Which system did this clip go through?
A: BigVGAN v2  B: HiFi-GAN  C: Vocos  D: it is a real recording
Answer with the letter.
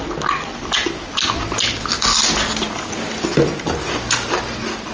D